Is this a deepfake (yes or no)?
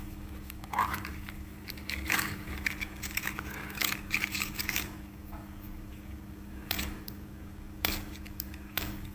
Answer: yes